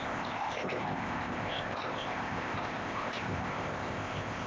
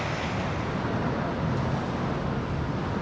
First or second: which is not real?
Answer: first